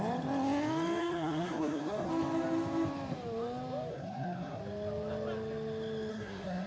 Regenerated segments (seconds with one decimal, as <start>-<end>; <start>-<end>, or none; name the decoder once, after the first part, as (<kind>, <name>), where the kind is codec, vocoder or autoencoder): 1.0-2.1 (codec, SNAC); 3.9-4.6; 6.1-6.7